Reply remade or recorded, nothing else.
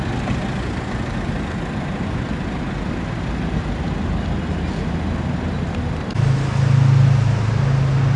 recorded